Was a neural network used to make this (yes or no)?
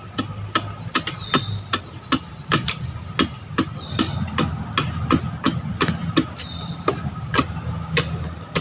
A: no